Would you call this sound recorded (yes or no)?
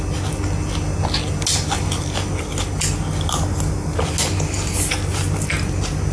yes